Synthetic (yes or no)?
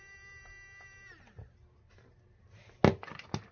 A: no